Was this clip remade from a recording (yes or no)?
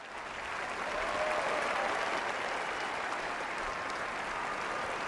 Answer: no